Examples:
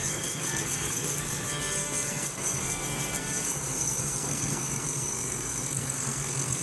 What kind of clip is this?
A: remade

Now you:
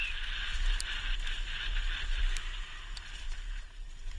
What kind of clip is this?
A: recorded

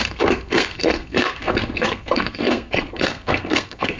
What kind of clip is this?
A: remade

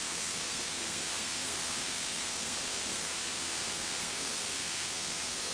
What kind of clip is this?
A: remade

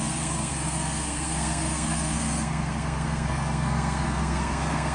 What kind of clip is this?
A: remade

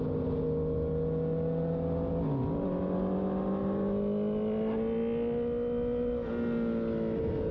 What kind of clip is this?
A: recorded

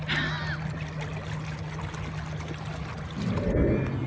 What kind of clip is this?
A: recorded